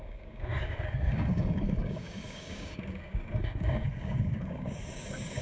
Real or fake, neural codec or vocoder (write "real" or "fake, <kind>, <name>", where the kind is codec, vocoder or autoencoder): fake, codec, DAC